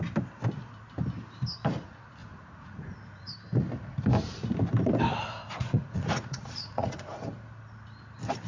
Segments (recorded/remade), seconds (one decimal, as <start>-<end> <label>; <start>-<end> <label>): 0.0-2.2 recorded; 2.2-3.3 remade; 3.3-5.2 recorded; 5.2-7.3 remade; 7.3-8.5 recorded